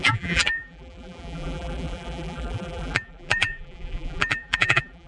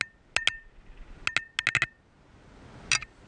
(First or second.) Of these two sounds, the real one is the second